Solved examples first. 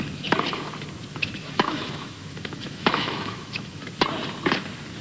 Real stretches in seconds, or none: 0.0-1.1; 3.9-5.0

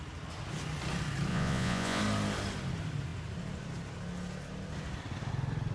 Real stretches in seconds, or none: 0.0-1.3; 2.0-5.7

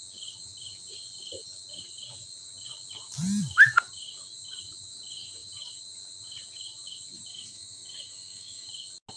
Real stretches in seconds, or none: 0.0-7.3; 8.7-9.2

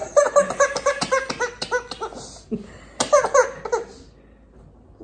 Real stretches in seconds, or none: 0.0-5.0

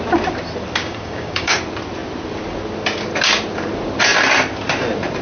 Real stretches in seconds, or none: 0.0-0.8; 1.6-5.2

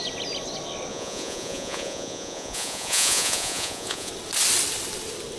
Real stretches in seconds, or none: 0.0-0.9; 4.1-5.4